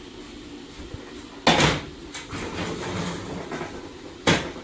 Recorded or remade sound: recorded